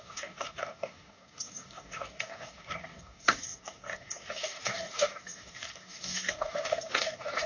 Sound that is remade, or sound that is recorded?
remade